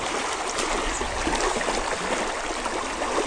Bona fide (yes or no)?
yes